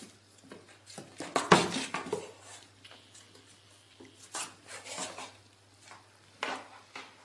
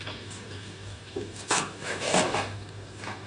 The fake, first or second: second